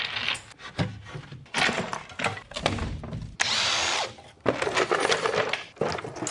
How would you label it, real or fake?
real